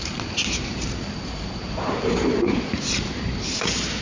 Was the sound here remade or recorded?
remade